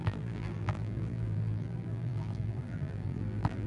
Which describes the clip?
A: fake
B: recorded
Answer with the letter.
A